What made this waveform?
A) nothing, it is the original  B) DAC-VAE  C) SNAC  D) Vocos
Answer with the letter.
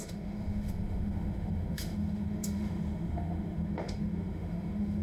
B